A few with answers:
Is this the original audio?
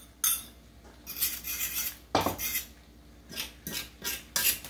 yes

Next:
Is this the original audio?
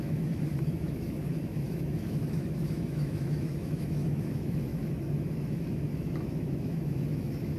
no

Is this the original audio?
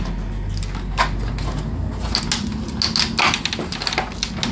yes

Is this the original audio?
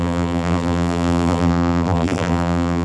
no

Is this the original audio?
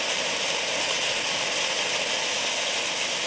yes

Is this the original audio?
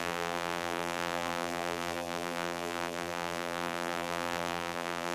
no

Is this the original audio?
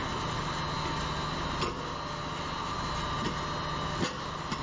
yes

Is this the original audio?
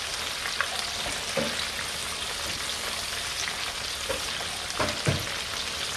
yes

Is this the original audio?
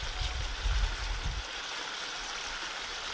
yes